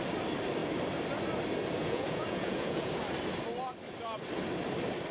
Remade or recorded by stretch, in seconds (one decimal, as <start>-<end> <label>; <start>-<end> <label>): 0.0-1.8 recorded; 1.8-2.9 remade; 2.9-5.1 recorded